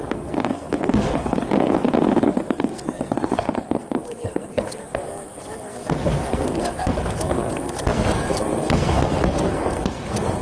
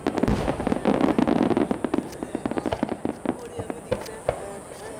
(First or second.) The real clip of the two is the second